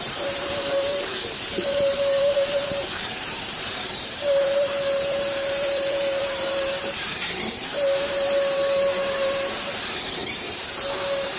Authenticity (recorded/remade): remade